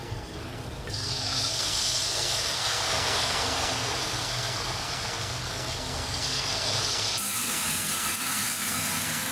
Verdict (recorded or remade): remade